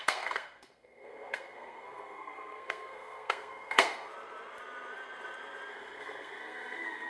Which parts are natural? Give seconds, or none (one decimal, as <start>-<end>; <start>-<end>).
4.1-5.7